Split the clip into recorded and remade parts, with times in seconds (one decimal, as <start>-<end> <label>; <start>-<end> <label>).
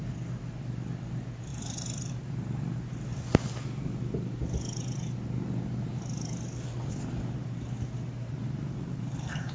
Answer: 0.0-1.5 recorded; 1.5-2.9 remade; 2.9-8.3 recorded; 8.3-9.5 remade